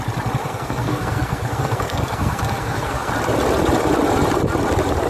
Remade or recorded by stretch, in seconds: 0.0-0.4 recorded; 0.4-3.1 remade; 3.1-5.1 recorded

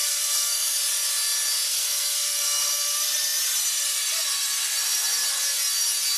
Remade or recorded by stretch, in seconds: 0.0-0.8 remade; 0.8-1.7 recorded; 1.7-2.9 remade; 2.9-6.2 recorded

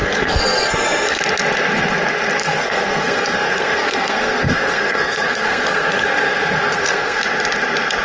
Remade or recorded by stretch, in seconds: 0.0-1.2 remade; 1.2-2.4 recorded; 2.4-7.2 remade; 7.2-8.0 recorded

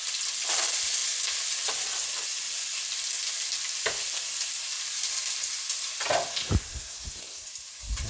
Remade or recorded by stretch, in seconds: 0.0-6.7 recorded; 6.7-7.4 remade; 7.4-8.1 recorded

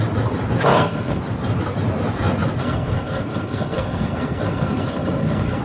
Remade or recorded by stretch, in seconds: 0.0-0.7 recorded; 0.7-1.2 remade; 1.2-2.6 recorded; 2.6-5.6 remade

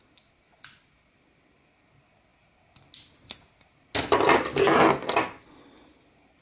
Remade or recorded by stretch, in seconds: 0.0-6.4 recorded

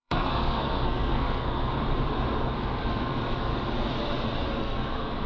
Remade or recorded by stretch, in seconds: 0.0-1.7 remade; 1.7-2.4 recorded; 2.4-3.5 remade; 3.5-4.6 recorded; 4.6-5.3 remade